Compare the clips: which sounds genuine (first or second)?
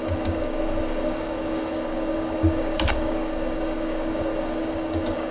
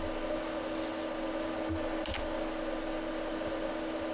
second